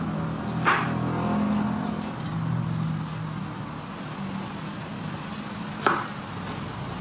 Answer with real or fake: real